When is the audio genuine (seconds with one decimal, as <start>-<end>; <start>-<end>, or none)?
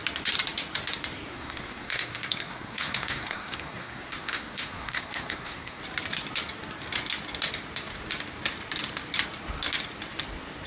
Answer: 0.0-1.3; 5.8-10.7